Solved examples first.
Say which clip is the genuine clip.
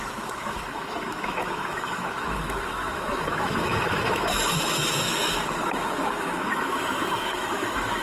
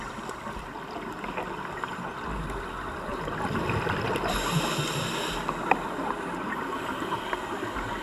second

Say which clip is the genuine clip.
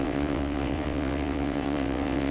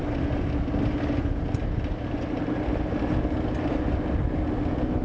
second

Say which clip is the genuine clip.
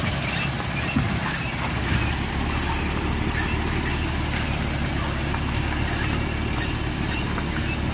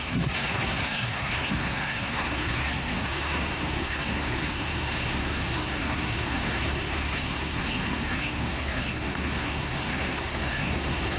first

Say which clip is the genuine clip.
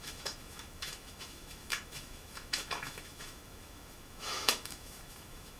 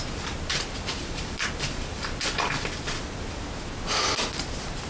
second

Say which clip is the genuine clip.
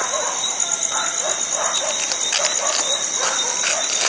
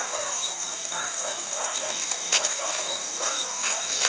first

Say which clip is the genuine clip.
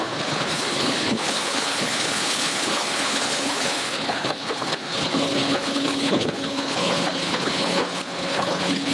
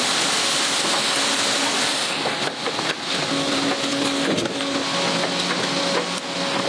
second